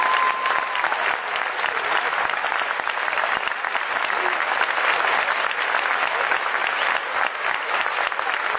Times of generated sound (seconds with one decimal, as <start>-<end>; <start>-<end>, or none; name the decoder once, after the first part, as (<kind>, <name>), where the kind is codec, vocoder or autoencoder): none